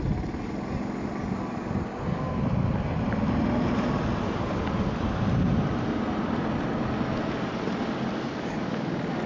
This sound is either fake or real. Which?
real